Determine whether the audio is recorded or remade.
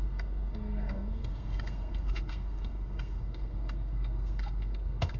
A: remade